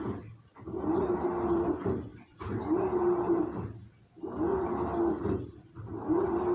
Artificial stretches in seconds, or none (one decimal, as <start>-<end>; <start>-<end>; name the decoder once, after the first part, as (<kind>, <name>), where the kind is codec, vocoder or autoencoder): 2.1-3.4 (vocoder, BigVGAN v2)